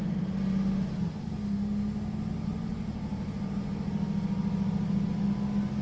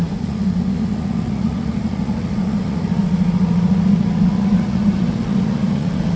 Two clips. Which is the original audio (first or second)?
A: first